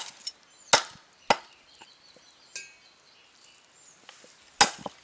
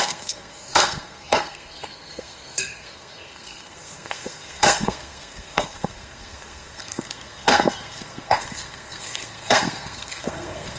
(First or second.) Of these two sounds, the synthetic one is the second